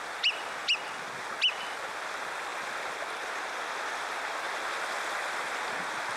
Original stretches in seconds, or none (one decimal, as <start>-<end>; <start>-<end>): 0.0-6.2